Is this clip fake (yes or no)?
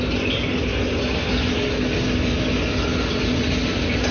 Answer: no